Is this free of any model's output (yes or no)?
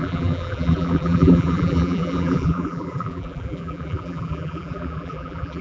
no